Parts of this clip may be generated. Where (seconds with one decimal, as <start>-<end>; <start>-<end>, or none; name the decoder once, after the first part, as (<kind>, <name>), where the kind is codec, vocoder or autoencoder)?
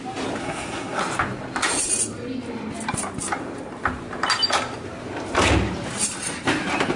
0.4-1.0 (codec, SNAC)